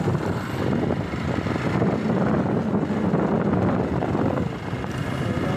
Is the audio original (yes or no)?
yes